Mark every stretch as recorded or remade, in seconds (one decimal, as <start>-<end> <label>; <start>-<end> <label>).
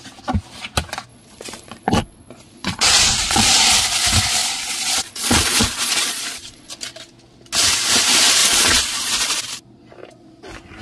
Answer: 0.0-1.1 recorded; 1.1-3.7 remade; 3.7-4.4 recorded; 4.4-6.7 remade; 6.7-8.4 recorded; 8.4-9.4 remade; 9.4-10.8 recorded